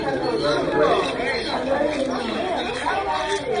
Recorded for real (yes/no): yes